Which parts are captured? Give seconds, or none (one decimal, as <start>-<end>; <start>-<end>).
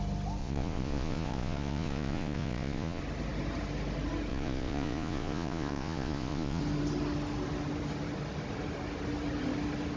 0.0-0.4; 3.0-4.3; 6.6-10.0